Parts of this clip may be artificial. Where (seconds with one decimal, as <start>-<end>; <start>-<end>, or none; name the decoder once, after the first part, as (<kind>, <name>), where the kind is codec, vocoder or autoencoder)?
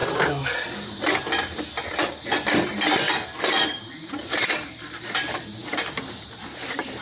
4.2-7.0 (vocoder, BigVGAN v2)